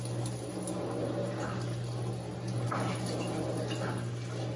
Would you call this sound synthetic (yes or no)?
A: no